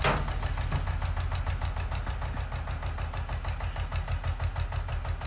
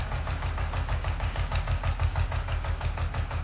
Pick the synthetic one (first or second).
second